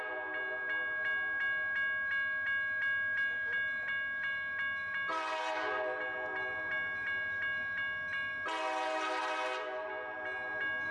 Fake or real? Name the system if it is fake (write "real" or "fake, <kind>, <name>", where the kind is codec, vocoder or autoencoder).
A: real